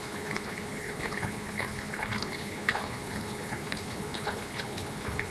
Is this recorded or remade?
remade